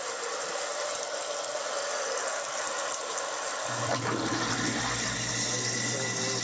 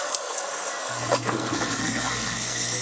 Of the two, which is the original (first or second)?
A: first